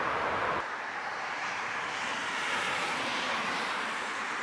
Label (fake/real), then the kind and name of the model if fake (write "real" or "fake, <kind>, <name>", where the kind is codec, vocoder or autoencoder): fake, vocoder, BigVGAN v2